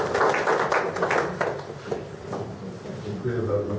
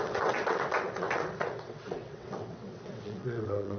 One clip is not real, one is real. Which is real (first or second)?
first